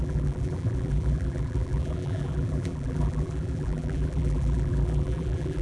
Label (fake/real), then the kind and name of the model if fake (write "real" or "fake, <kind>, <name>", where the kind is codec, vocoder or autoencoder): fake, vocoder, BigVGAN v2